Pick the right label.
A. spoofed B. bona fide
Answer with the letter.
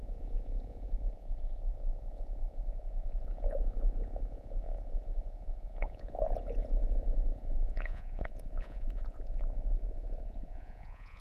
A